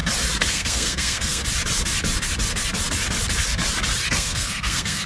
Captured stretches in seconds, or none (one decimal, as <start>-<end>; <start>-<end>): 0.0-0.5; 1.4-4.1

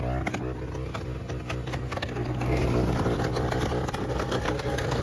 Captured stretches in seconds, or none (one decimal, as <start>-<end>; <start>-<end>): 0.0-1.7; 2.6-4.0

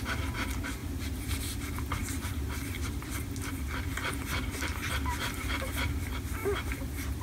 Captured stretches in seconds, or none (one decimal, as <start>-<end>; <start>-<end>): 0.0-0.8; 1.4-2.0; 5.7-6.4

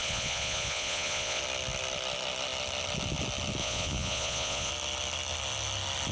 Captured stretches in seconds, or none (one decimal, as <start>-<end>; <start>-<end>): 1.4-3.6; 4.7-6.1